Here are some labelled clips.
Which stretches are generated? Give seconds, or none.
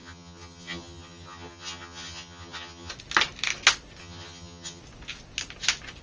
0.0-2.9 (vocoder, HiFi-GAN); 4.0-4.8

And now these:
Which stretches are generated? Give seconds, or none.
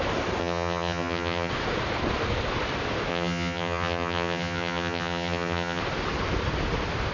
0.4-1.5 (vocoder, HiFi-GAN); 3.1-5.8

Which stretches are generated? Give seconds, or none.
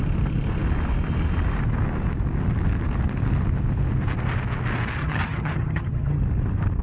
5.0-6.2 (vocoder, HiFi-GAN)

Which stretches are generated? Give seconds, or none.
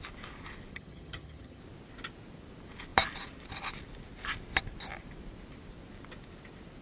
0.7-1.6 (vocoder, HiFi-GAN)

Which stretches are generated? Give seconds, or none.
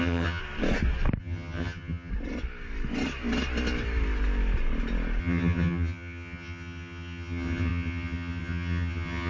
0.0-0.4 (vocoder, HiFi-GAN); 1.2-2.1; 5.2-9.3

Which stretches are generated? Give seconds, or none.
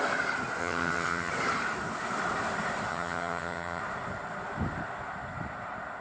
0.6-1.3 (vocoder, HiFi-GAN); 2.9-3.8